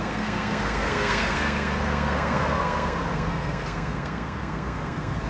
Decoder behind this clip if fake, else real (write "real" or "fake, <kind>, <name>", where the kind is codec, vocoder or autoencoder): fake, codec, SNAC